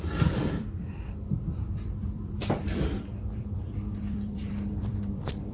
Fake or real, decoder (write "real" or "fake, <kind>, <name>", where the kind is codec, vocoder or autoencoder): fake, vocoder, BigVGAN v2